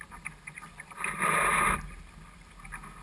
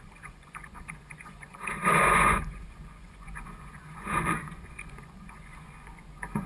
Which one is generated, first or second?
second